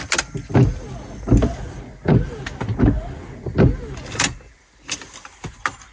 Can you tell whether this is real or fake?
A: real